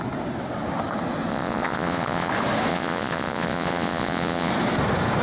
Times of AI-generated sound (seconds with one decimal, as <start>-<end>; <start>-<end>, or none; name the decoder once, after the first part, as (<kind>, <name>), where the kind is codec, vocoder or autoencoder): 1.3-2.3 (vocoder, Vocos); 2.7-4.5